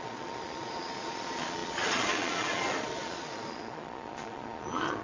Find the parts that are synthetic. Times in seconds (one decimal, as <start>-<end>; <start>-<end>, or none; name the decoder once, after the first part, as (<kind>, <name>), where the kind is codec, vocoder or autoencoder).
0.0-5.0 (vocoder, Vocos)